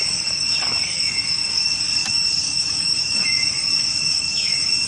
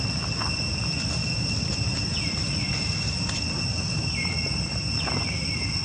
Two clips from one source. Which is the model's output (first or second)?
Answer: first